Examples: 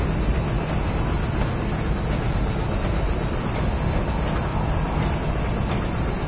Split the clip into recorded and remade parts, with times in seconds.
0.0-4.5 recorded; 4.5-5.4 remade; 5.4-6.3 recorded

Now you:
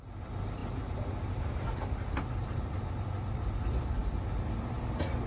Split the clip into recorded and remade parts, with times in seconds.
0.0-5.3 recorded

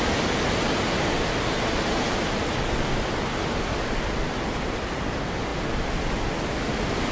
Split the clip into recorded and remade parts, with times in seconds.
0.0-7.1 recorded

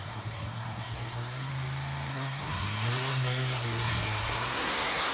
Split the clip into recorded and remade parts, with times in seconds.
0.0-1.5 remade; 1.5-2.1 recorded; 2.1-5.1 remade

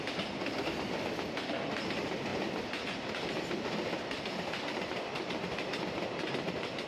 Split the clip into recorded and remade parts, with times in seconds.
0.0-6.9 recorded

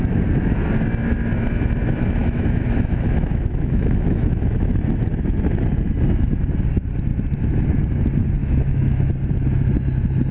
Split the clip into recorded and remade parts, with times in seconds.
0.0-2.2 recorded; 2.2-4.7 remade; 4.7-8.4 recorded; 8.4-9.1 remade; 9.1-10.3 recorded

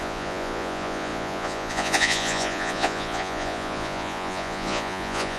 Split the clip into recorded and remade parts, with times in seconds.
0.0-5.4 remade

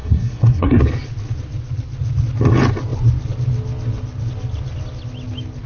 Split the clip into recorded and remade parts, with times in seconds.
0.0-0.8 remade; 0.8-5.7 recorded